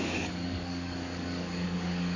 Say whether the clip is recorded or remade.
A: remade